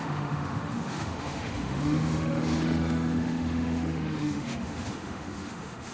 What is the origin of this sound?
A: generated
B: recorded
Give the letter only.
A